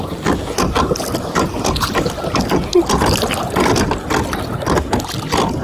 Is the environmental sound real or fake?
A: real